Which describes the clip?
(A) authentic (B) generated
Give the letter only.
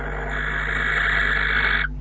A